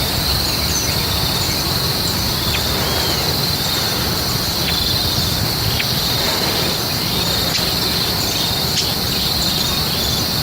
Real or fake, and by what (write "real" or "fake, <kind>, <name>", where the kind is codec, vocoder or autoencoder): real